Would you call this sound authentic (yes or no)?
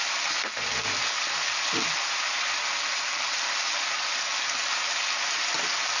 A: yes